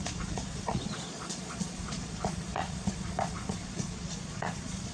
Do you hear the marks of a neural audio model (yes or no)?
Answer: yes